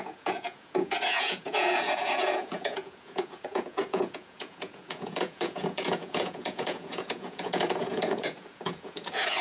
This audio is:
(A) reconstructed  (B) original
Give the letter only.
A